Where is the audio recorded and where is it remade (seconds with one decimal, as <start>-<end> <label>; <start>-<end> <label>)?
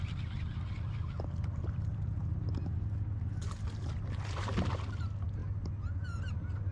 0.0-6.7 recorded